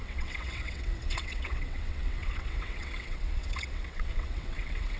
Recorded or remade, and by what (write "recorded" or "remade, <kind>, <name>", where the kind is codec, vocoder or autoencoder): remade, vocoder, WaveNeXt